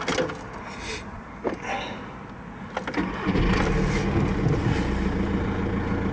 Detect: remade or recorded recorded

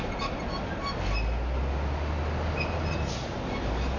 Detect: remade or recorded recorded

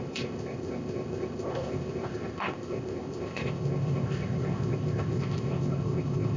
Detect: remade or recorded remade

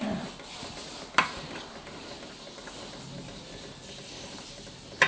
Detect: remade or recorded recorded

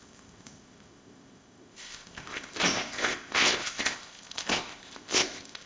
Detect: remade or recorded remade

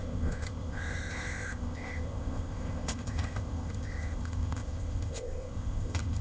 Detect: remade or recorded remade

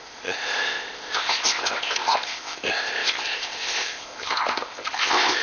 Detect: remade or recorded remade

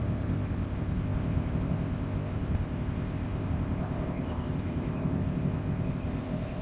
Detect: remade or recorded remade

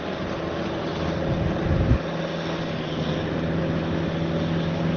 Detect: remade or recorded recorded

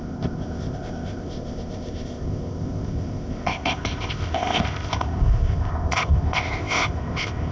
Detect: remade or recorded remade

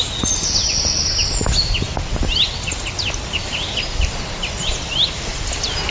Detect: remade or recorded recorded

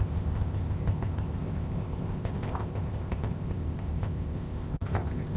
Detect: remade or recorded remade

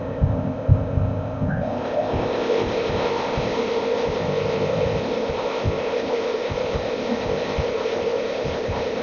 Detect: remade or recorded remade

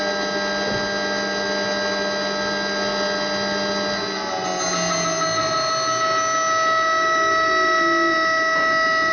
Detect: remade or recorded recorded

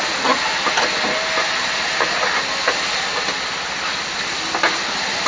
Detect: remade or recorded recorded